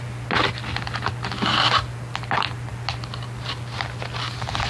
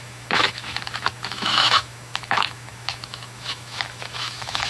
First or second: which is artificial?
second